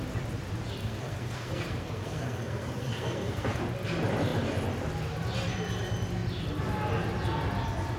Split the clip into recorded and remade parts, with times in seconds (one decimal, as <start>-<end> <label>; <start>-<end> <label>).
0.0-0.8 recorded; 0.8-3.6 remade; 3.6-8.0 recorded